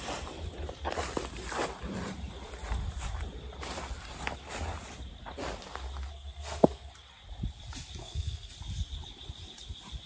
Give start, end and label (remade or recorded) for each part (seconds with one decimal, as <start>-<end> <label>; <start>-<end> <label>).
0.0-6.1 recorded; 6.1-6.9 remade; 6.9-8.0 recorded; 8.0-8.5 remade; 8.5-10.1 recorded